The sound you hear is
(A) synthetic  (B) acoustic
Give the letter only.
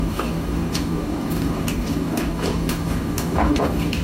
A